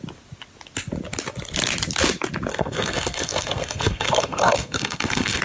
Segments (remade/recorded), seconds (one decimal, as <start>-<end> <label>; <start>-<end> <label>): 0.0-2.5 recorded; 2.5-5.4 remade